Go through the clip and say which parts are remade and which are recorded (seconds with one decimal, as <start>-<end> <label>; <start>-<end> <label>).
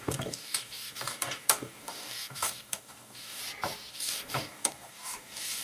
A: 0.0-3.4 remade; 3.4-3.9 recorded; 3.9-5.6 remade